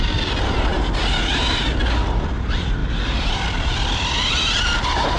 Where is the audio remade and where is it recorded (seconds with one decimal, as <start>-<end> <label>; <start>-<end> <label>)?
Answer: 0.0-2.8 recorded; 2.8-4.8 remade; 4.8-5.2 recorded